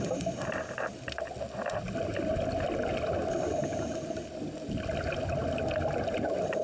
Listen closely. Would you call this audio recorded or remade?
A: recorded